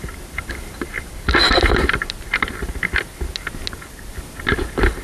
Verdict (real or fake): real